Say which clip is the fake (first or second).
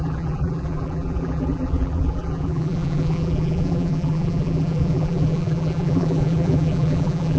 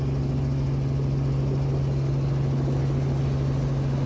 first